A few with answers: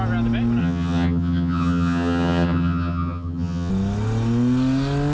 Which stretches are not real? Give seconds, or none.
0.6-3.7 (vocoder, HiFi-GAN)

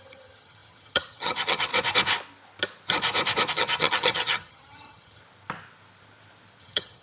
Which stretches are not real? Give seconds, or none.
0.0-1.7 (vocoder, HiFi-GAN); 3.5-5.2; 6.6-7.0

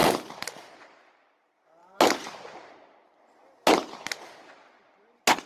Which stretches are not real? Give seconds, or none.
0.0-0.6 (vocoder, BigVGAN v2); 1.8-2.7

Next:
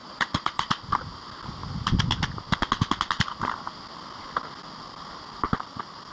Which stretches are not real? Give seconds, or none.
0.0-0.7 (vocoder, Vocos)

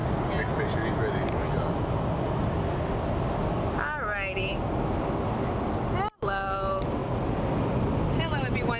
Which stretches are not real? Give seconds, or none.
none

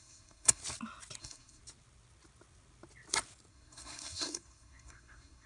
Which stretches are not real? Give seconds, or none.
0.0-0.6 (codec, SNAC); 1.2-1.6; 3.5-5.5

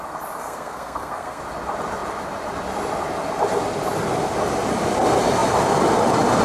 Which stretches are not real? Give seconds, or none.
0.4-1.4 (codec, SNAC)

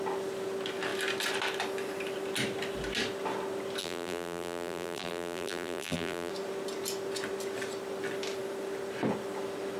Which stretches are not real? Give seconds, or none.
3.8-6.3 (vocoder, BigVGAN v2)